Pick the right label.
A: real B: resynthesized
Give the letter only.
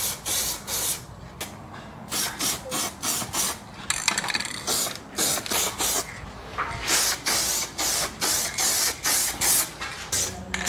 A